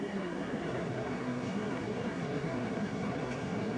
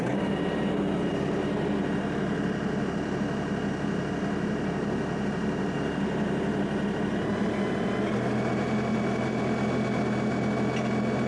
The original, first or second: second